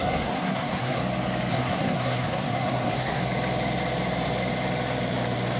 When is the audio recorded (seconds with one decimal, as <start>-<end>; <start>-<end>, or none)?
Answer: 1.0-1.5; 3.2-5.6